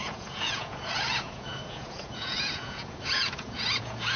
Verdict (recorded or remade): remade